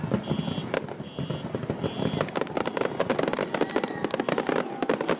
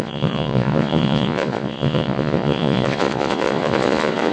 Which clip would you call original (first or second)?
first